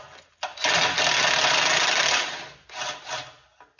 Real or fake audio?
real